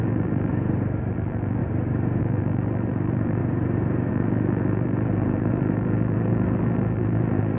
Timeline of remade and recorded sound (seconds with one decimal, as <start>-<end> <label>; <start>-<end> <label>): 0.0-0.5 remade; 0.5-1.1 recorded; 1.1-1.6 remade; 1.6-2.2 recorded; 2.2-3.4 remade; 3.4-4.1 recorded; 4.1-7.6 remade